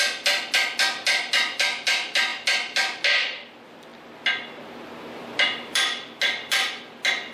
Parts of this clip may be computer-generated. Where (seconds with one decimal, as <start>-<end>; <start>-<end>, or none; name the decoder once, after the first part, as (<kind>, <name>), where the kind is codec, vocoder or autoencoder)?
none